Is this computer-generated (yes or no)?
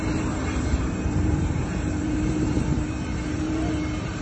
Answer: yes